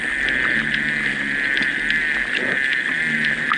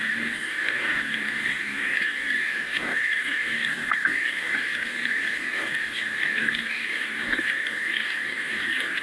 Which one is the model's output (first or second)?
second